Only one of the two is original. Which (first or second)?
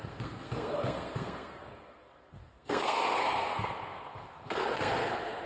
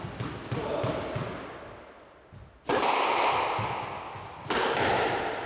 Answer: second